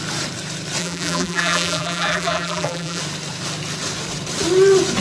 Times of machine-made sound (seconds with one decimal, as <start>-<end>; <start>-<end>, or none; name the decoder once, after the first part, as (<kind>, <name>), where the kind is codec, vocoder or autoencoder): 0.8-3.0 (vocoder, BigVGAN v2)